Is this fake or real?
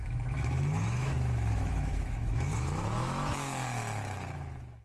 fake